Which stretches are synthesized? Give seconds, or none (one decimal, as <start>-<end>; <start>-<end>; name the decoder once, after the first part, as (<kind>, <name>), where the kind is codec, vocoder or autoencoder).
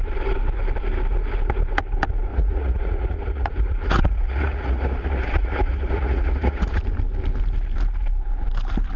2.3-6.8 (vocoder, Vocos)